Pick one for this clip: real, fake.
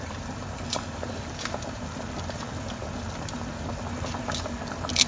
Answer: real